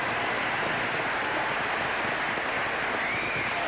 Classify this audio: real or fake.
real